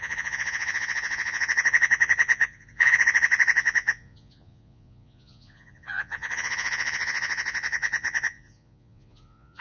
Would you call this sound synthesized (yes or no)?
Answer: yes